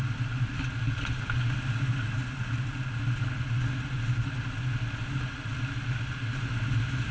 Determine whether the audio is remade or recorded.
recorded